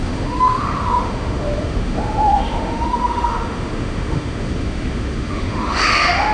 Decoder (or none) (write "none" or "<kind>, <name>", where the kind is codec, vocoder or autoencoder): autoencoder, DAC-VAE